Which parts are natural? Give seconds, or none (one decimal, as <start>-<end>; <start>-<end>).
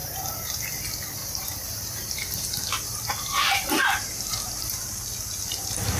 0.7-1.2; 2.5-3.3; 4.9-6.0